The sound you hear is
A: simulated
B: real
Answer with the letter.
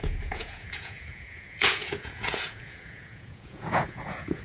A